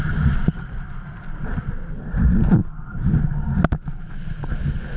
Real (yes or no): yes